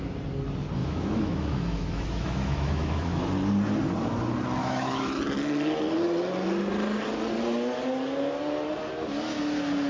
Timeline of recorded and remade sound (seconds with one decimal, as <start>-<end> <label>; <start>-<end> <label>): 0.0-0.8 recorded; 0.8-3.2 remade; 3.2-4.6 recorded; 4.6-5.2 remade; 5.2-9.9 recorded